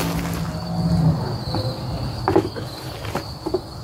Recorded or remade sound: recorded